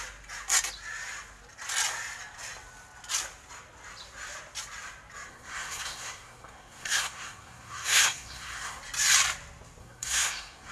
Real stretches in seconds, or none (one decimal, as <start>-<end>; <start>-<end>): 0.0-5.3; 8.8-9.8